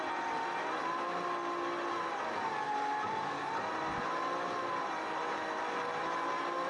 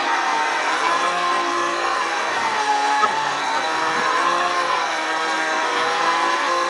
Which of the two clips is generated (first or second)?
second